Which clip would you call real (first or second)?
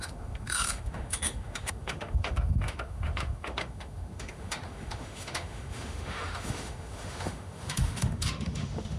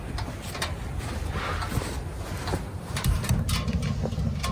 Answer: second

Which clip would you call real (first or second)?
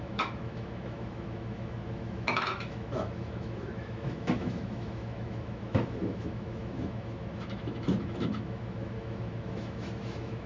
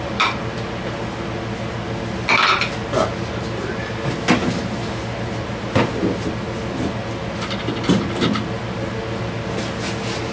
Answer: second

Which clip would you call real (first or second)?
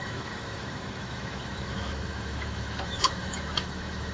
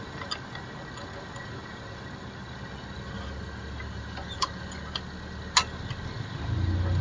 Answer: second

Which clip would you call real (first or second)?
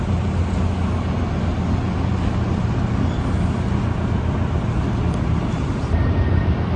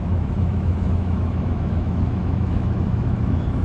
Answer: first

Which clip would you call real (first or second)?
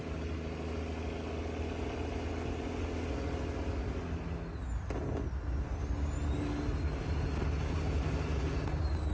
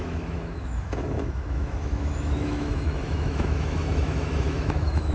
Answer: first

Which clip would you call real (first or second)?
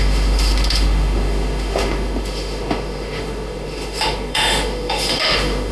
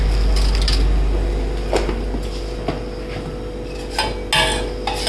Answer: second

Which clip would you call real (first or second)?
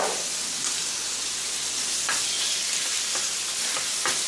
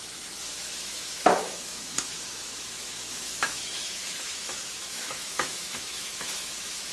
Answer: first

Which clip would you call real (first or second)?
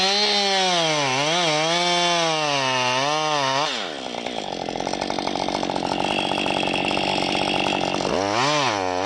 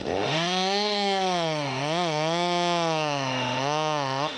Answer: first